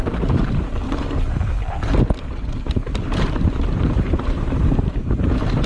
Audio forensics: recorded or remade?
remade